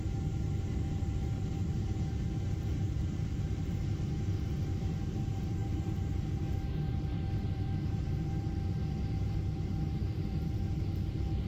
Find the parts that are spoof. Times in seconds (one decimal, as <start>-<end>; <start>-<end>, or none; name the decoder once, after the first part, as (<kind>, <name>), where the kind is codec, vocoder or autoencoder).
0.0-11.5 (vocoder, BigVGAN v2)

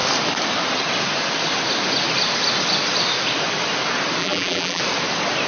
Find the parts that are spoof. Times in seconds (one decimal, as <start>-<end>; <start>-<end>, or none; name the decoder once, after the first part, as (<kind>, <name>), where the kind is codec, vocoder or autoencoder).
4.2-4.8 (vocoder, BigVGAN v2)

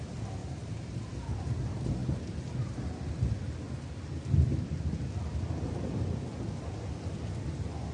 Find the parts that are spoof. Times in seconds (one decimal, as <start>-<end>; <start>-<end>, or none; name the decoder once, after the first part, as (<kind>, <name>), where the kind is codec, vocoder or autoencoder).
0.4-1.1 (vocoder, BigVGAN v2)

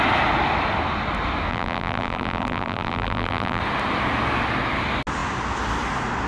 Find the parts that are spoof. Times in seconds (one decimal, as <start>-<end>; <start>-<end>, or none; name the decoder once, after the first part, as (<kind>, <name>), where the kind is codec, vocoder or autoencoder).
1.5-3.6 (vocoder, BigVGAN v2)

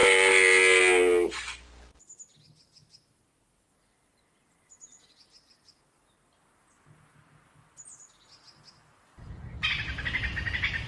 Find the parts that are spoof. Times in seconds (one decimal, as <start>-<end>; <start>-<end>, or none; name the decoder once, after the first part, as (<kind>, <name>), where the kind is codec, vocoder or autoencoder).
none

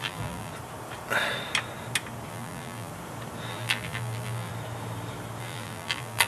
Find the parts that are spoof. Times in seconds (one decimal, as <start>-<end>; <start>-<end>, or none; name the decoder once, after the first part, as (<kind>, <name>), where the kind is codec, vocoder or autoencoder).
0.0-0.5 (vocoder, BigVGAN v2); 2.3-2.9; 3.5-4.5; 5.4-6.3

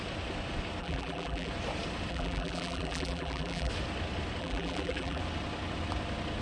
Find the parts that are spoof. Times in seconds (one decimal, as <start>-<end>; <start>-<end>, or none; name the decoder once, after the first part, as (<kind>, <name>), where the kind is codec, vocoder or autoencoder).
0.8-1.5 (vocoder, BigVGAN v2); 2.1-3.7; 4.4-5.2

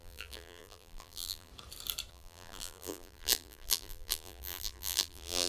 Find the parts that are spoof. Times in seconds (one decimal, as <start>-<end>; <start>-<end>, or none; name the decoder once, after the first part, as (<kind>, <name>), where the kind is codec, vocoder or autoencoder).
0.0-1.5 (vocoder, BigVGAN v2); 2.1-5.5